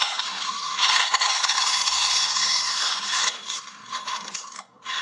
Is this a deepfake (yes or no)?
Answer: yes